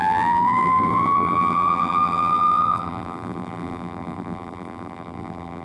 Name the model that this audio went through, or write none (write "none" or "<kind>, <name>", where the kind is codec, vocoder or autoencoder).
vocoder, BigVGAN v2